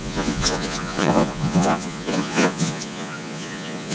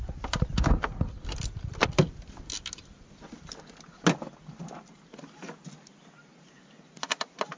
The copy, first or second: first